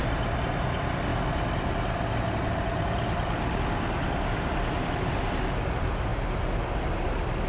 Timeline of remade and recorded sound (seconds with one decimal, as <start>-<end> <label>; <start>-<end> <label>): 0.0-7.5 recorded